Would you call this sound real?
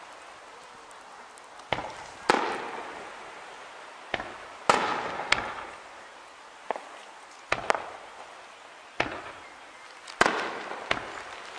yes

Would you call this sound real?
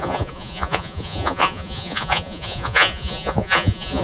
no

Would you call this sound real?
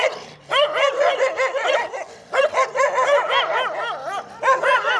yes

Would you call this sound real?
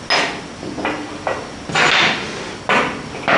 yes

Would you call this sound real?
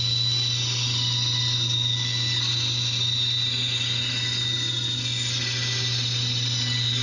yes